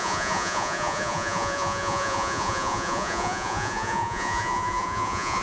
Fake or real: fake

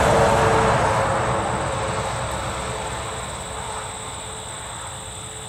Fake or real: real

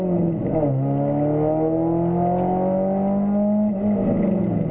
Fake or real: real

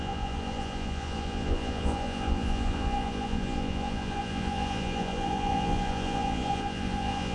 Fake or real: fake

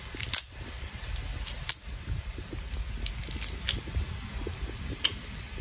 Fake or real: real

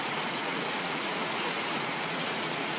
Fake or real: fake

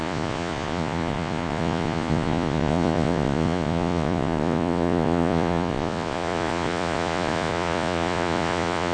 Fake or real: fake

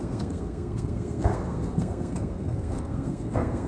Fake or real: fake